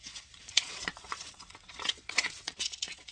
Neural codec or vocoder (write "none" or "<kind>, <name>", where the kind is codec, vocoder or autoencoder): vocoder, Vocos